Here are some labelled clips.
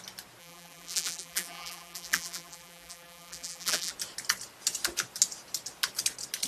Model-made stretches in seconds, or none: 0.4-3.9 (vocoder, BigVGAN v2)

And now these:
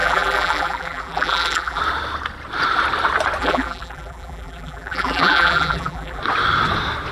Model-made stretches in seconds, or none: 0.0-1.8 (vocoder, BigVGAN v2); 3.4-6.2

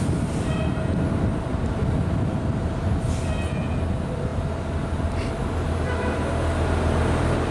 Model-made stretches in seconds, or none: none